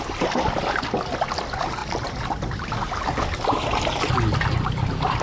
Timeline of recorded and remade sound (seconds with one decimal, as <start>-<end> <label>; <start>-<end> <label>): 0.0-5.2 recorded